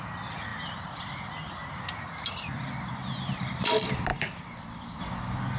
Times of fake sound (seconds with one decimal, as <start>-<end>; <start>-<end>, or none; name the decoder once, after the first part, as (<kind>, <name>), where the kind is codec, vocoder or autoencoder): 0.5-1.0 (vocoder, BigVGAN v2); 1.6-3.4; 4.1-5.0